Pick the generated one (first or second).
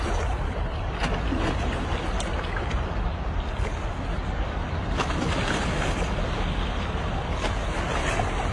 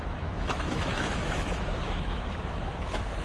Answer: second